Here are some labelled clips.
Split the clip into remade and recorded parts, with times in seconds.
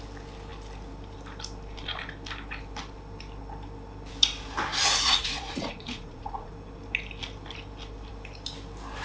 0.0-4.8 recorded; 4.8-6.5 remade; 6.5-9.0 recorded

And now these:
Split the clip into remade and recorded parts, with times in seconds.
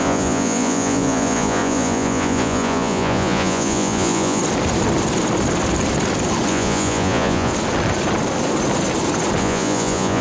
0.0-4.4 remade; 4.4-6.5 recorded; 6.5-7.5 remade; 7.5-9.4 recorded; 9.4-10.2 remade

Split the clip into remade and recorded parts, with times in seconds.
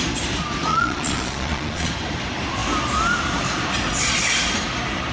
0.0-0.7 recorded; 0.7-1.9 remade; 1.9-5.1 recorded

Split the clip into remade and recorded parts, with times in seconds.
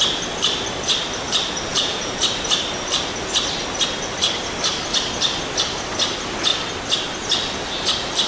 0.0-1.7 recorded; 1.7-2.2 remade; 2.2-8.3 recorded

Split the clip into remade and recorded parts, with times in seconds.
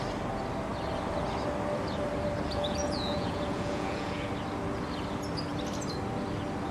0.0-2.5 recorded; 2.5-4.3 remade; 4.3-6.7 recorded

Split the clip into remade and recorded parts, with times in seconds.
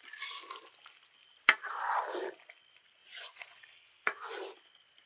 0.0-3.0 recorded; 3.0-4.3 remade; 4.3-5.1 recorded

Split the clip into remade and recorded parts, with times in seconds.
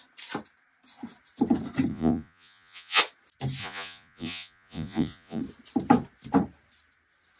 0.0-1.9 recorded; 1.9-3.0 remade; 3.0-3.6 recorded; 3.6-5.4 remade; 5.4-7.4 recorded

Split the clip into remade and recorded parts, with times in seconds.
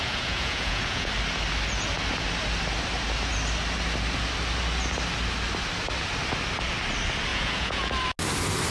0.0-1.1 remade; 1.1-7.3 recorded; 7.3-7.9 remade; 7.9-8.7 recorded